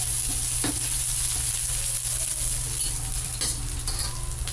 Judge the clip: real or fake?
real